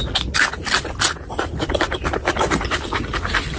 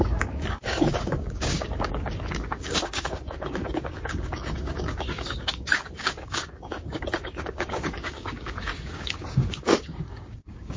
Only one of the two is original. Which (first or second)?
first